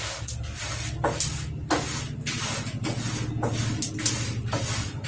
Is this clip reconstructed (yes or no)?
no